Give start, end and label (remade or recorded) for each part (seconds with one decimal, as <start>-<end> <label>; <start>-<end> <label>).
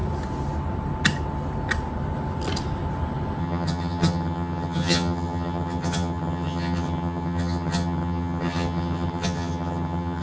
0.0-3.4 recorded; 3.4-10.2 remade